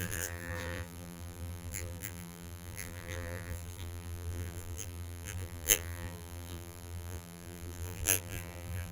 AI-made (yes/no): yes